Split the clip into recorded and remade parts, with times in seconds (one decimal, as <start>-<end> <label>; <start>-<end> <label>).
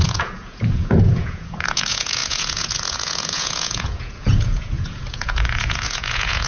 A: 0.0-6.5 remade